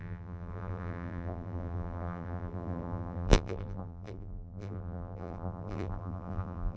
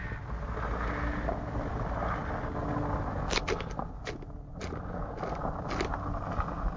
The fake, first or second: first